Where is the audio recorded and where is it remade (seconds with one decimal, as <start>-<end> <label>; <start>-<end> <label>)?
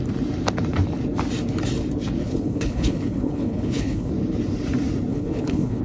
0.0-2.2 recorded; 2.2-4.1 remade; 4.1-5.1 recorded; 5.1-5.8 remade